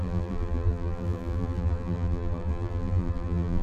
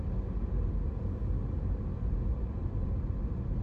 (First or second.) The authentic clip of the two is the second